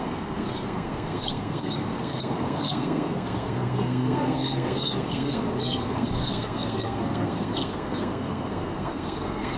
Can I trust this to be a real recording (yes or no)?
no